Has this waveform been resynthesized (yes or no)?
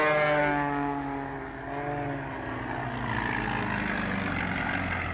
no